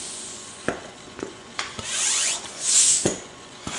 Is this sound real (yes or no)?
no